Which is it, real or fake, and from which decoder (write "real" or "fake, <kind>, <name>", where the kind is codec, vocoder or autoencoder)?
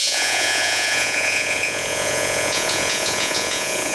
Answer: fake, vocoder, Vocos